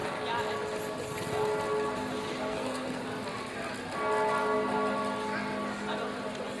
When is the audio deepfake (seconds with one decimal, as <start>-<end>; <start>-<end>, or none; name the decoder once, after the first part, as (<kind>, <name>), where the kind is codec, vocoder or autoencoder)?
2.5-3.0 (codec, SNAC)